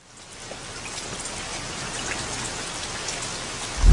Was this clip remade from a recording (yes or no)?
no